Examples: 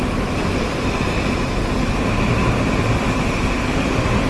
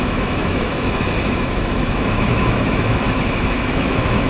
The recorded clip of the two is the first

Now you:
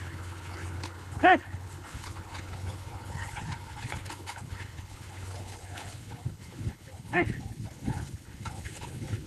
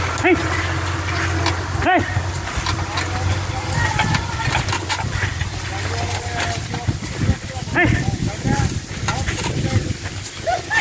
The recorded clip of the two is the second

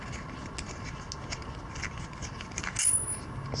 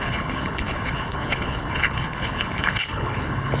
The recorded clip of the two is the first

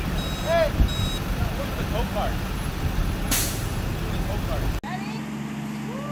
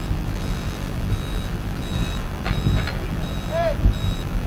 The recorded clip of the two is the first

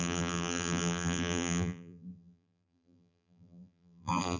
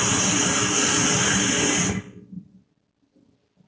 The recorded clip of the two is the second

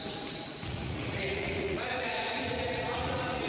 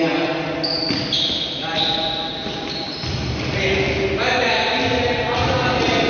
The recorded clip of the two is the second